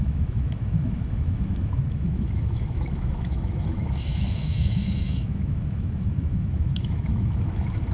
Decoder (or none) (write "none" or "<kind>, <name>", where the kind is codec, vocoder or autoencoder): autoencoder, DAC-VAE